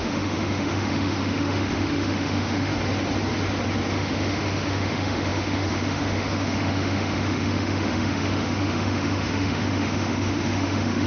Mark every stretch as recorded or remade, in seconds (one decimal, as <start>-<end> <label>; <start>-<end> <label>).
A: 0.0-2.7 remade; 2.7-3.9 recorded; 3.9-11.1 remade